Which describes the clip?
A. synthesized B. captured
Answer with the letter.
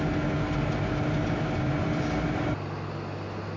B